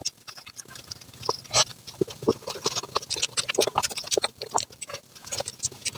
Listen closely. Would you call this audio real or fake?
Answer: real